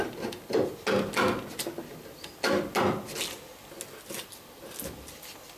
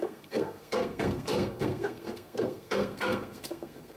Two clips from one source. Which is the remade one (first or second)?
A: second